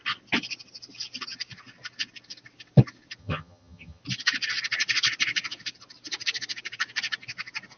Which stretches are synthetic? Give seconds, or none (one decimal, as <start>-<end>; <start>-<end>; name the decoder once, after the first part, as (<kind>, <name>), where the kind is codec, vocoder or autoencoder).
3.2-4.0 (vocoder, HiFi-GAN)